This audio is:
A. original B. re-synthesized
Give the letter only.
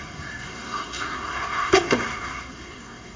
B